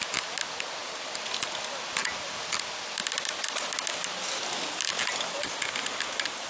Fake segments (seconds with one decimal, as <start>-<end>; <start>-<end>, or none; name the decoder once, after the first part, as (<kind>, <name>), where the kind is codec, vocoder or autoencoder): none